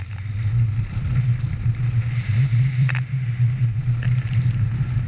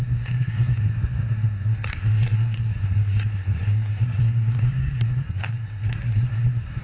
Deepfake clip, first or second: second